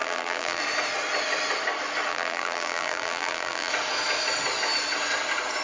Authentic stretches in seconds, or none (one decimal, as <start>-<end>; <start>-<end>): 0.6-2.1; 3.7-5.6